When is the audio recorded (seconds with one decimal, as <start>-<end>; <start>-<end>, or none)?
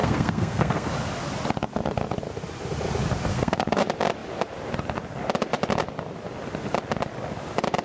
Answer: 0.9-3.3; 3.8-7.8